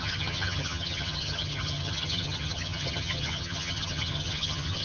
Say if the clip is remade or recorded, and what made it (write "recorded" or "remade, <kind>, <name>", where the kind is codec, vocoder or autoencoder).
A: remade, vocoder, HiFi-GAN